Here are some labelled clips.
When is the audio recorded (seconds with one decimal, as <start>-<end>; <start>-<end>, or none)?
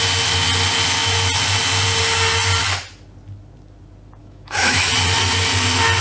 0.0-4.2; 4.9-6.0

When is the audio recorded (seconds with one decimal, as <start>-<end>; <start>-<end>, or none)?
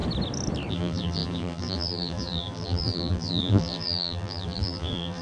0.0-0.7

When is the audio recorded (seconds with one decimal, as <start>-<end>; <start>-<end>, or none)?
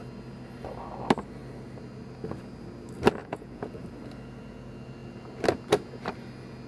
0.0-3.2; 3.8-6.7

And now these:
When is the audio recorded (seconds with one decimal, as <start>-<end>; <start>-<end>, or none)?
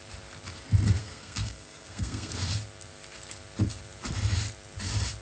0.0-1.0; 2.3-5.2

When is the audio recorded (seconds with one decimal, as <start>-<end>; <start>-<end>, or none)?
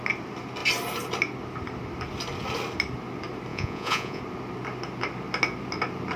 0.0-3.5; 4.2-6.2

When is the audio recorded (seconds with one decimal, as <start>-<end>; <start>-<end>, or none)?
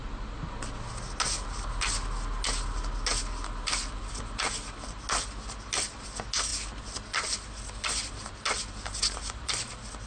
0.0-10.1